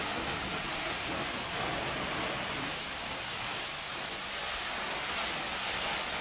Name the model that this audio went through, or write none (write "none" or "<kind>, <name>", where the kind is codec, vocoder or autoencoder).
none